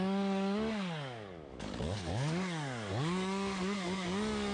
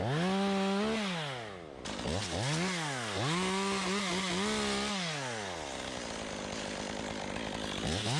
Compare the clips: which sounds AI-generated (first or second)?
first